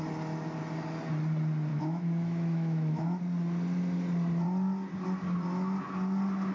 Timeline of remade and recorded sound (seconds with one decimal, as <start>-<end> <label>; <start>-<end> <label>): 0.0-1.7 recorded; 1.7-3.2 remade; 3.2-6.5 recorded